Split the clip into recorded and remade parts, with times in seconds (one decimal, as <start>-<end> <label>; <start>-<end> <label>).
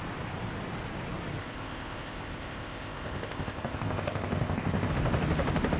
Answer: 0.0-1.4 recorded; 1.4-4.9 remade; 4.9-5.8 recorded